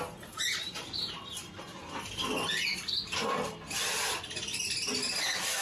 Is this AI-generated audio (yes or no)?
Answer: no